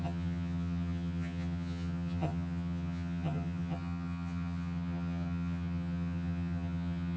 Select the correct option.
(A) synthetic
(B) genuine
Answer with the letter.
A